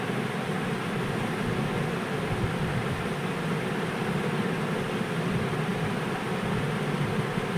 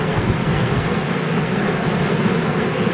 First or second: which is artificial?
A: second